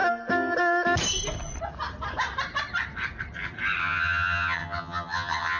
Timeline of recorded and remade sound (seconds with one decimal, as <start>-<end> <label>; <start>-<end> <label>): 0.0-3.8 recorded; 3.8-5.6 remade